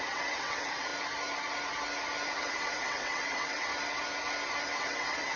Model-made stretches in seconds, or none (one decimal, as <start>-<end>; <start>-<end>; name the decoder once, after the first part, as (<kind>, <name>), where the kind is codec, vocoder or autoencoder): 0.0-0.9 (vocoder, WaveNeXt); 2.4-3.7; 4.8-5.4